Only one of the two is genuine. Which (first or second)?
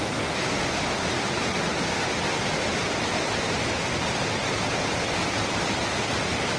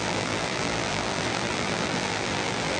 first